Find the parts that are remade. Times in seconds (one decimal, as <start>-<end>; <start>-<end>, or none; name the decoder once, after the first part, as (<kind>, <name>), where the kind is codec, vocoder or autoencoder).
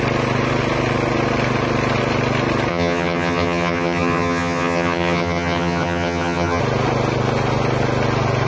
2.7-6.6 (vocoder, HiFi-GAN)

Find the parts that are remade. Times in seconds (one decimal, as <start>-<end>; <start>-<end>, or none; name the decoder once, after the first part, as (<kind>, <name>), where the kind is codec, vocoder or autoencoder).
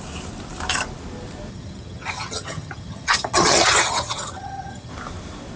1.5-4.9 (vocoder, HiFi-GAN)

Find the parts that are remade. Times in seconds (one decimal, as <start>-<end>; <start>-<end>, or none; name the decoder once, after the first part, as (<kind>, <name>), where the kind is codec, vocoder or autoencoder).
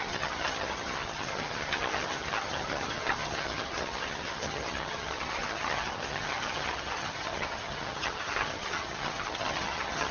0.0-10.1 (vocoder, HiFi-GAN)